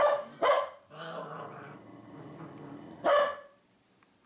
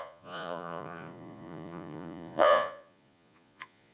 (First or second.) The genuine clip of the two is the first